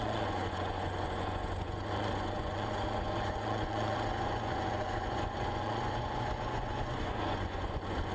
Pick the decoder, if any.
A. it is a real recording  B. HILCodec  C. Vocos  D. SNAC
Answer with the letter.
C